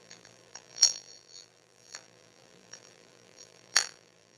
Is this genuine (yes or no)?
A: no